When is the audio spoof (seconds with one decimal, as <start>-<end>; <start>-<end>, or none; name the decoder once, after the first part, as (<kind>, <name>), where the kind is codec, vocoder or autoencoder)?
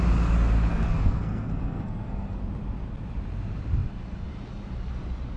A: 0.7-2.4 (codec, SNAC)